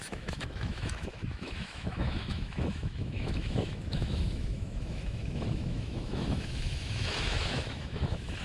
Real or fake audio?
fake